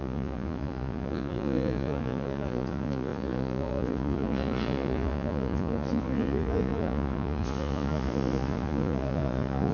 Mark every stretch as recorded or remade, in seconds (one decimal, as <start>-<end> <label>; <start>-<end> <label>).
0.0-9.7 remade